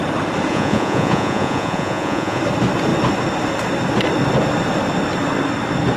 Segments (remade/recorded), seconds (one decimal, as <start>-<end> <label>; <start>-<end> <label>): 0.0-0.5 recorded; 0.5-2.4 remade; 2.4-6.0 recorded